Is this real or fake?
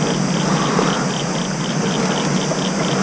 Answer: real